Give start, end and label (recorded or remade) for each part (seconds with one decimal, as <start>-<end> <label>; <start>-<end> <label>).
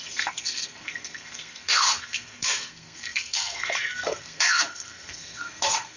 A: 0.0-6.0 remade